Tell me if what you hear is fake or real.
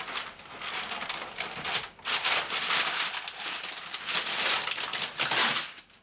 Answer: real